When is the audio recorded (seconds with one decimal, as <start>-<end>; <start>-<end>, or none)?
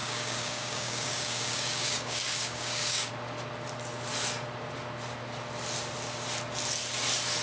3.1-7.4